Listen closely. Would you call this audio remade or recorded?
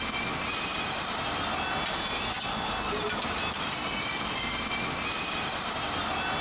recorded